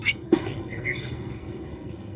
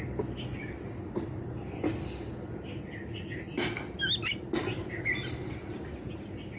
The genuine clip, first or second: second